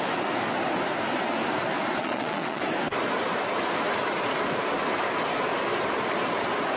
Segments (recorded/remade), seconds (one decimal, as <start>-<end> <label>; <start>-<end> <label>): 0.0-2.0 recorded; 2.0-2.6 remade; 2.6-6.8 recorded